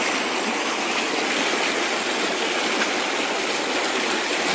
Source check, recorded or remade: recorded